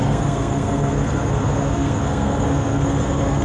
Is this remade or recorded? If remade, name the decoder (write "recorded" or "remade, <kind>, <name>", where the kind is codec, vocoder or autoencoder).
remade, codec, SNAC